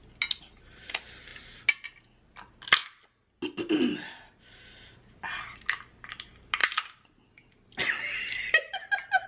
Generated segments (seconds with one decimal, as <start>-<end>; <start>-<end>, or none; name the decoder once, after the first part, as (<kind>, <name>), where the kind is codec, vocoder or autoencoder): none